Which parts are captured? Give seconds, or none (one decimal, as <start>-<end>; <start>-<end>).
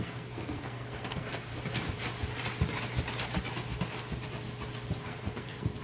1.5-5.0